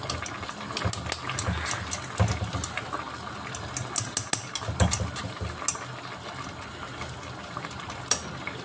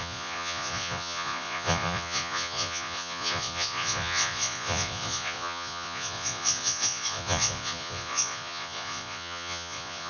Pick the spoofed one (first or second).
second